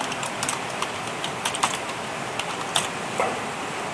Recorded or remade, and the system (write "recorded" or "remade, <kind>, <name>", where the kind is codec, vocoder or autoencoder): recorded